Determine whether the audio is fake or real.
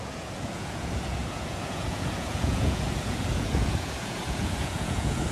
fake